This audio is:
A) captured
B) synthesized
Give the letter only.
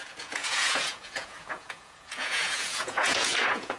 B